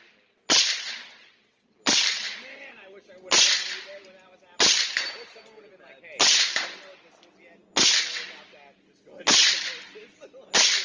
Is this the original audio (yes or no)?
yes